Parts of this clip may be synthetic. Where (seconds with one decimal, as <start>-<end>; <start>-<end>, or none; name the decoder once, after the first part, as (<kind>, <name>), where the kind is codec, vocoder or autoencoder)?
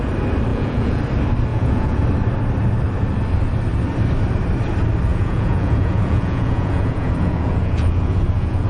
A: 0.5-1.0 (vocoder, Vocos); 1.5-2.0; 5.1-8.7